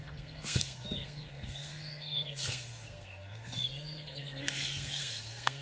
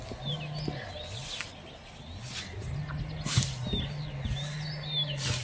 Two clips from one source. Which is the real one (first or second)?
second